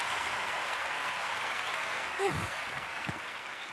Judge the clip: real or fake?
fake